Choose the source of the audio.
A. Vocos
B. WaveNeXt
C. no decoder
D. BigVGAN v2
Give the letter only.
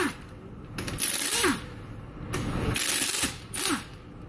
C